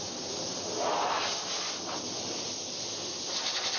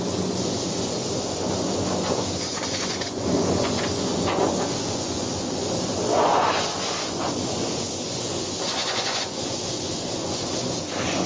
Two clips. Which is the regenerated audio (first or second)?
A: second